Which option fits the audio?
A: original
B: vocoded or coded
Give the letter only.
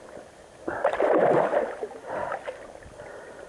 A